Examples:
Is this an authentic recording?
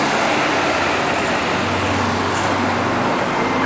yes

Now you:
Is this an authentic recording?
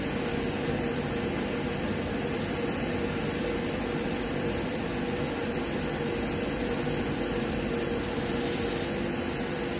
yes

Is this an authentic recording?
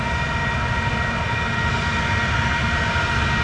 yes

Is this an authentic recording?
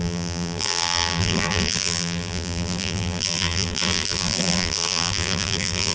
no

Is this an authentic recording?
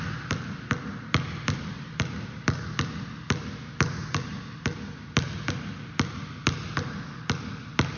yes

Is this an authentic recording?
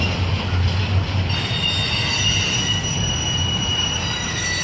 yes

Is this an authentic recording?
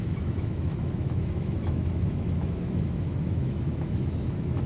no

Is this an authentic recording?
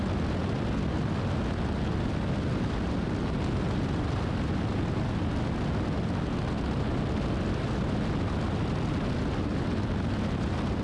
yes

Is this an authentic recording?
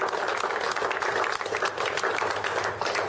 yes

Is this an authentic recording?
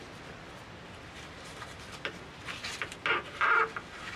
yes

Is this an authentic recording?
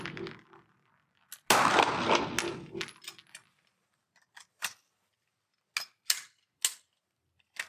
yes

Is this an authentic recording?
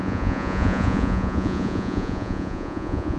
no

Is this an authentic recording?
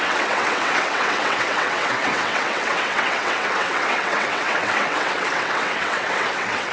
no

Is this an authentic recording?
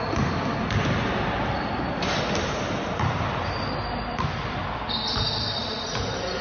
no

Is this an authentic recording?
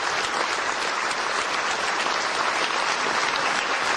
yes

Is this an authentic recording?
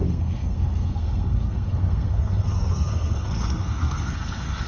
no